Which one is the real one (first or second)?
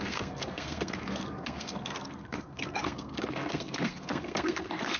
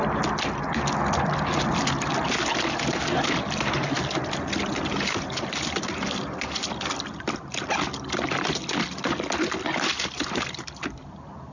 second